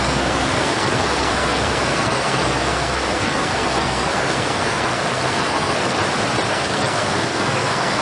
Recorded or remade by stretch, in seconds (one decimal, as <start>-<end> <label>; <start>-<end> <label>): 0.0-6.0 remade; 6.0-6.5 recorded; 6.5-8.0 remade